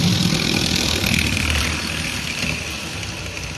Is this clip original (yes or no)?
no